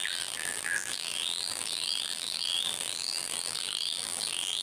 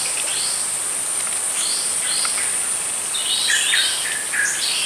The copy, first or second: first